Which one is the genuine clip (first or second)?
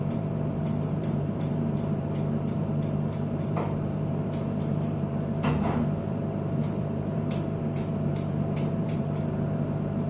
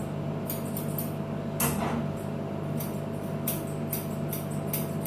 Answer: second